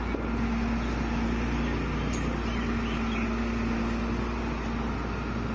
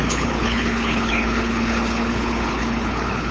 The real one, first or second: first